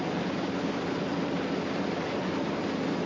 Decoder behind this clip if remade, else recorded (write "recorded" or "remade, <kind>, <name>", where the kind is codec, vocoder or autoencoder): recorded